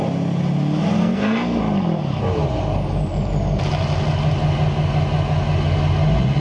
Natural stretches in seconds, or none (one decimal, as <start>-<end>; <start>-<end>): 0.0-1.0; 1.6-6.4